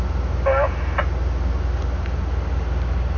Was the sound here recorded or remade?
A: recorded